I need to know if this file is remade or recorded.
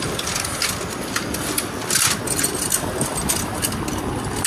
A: recorded